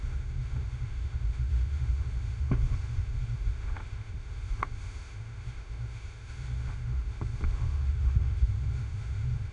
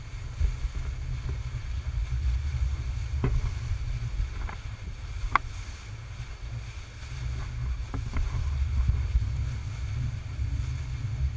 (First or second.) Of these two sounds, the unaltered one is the second